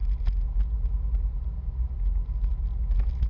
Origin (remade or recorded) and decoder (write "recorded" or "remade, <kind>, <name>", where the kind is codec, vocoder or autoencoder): recorded